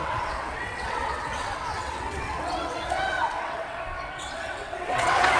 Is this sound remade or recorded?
remade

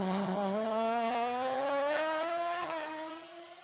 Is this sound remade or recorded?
remade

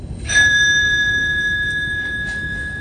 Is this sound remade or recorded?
remade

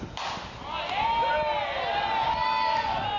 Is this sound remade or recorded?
recorded